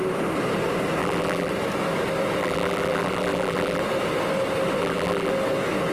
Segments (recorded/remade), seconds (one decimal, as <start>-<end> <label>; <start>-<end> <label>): 0.0-1.0 recorded; 1.0-1.5 remade; 1.5-2.4 recorded; 2.4-3.8 remade; 3.8-4.8 recorded; 4.8-5.3 remade; 5.3-5.9 recorded